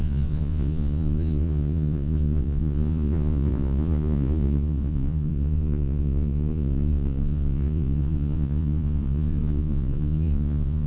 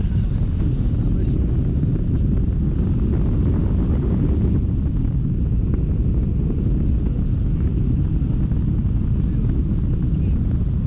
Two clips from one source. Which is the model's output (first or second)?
first